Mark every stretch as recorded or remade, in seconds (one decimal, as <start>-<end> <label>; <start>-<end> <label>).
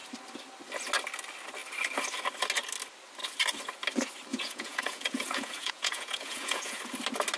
0.0-4.3 recorded; 4.3-6.8 remade; 6.8-7.4 recorded